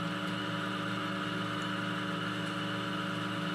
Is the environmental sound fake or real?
real